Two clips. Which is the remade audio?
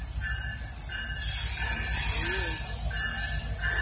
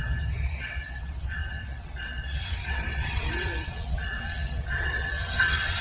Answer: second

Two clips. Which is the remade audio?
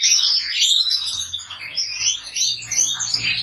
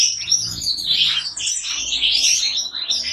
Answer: second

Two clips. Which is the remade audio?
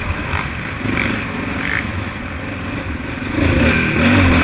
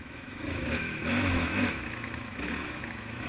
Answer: second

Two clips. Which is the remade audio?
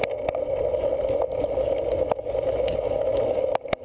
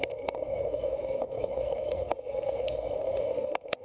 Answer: second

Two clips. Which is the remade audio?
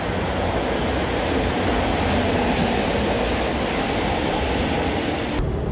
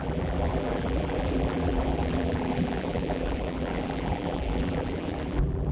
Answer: second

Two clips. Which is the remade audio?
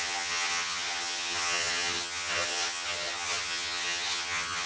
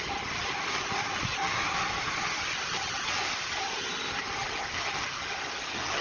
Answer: first